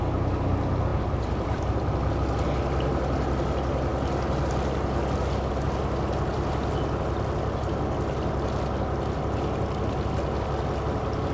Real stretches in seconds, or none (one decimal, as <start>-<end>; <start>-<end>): 0.0-0.9; 2.1-11.3